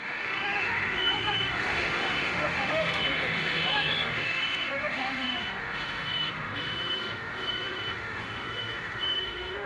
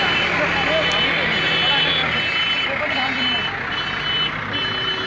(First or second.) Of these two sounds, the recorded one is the second